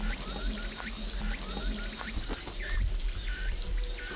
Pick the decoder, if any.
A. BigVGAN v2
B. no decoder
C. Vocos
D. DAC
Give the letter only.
B